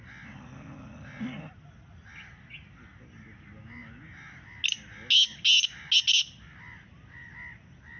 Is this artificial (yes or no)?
no